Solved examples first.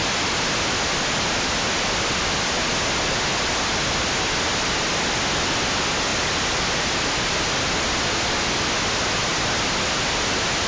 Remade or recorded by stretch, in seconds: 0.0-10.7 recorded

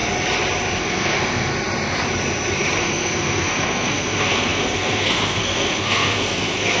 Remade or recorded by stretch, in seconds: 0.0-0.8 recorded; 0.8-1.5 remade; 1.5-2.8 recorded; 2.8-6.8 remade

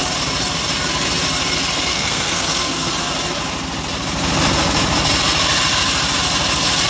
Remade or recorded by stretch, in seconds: 0.0-1.9 recorded; 1.9-2.9 remade; 2.9-6.9 recorded